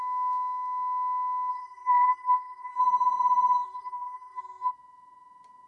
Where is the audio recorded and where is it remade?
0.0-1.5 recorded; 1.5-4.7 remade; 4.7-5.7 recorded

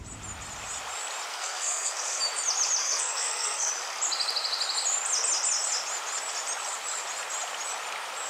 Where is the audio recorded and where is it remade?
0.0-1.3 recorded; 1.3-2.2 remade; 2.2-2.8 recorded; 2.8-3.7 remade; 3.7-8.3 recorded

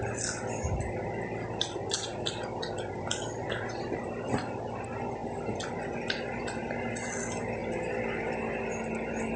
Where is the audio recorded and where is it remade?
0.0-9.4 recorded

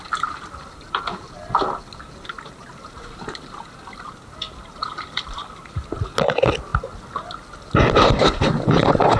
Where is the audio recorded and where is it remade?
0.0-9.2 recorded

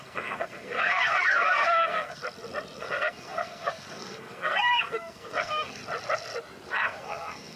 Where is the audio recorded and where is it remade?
0.0-2.2 remade; 2.2-2.8 recorded; 2.8-5.8 remade; 5.8-6.7 recorded; 6.7-7.6 remade

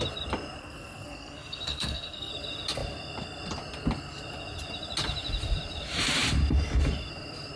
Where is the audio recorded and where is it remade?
0.0-0.6 recorded; 0.6-2.3 remade; 2.3-7.6 recorded

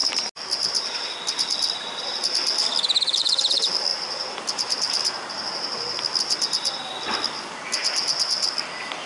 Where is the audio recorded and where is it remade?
0.0-9.1 recorded